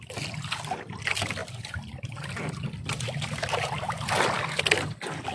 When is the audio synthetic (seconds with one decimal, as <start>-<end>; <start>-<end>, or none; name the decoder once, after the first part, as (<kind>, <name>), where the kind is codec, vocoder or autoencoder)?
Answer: 1.4-4.6 (vocoder, BigVGAN v2)